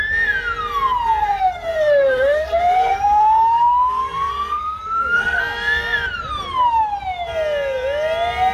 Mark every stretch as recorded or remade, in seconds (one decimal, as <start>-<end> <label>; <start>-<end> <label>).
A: 0.0-1.2 recorded; 1.2-5.4 remade; 5.4-8.5 recorded